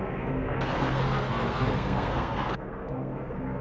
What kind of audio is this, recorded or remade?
remade